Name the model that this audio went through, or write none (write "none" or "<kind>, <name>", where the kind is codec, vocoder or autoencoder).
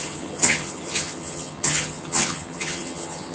vocoder, HiFi-GAN